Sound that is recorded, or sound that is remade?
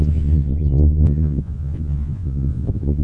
remade